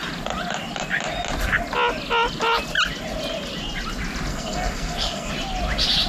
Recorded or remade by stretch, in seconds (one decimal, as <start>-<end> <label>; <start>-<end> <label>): 0.0-4.3 recorded; 4.3-5.3 remade; 5.3-6.1 recorded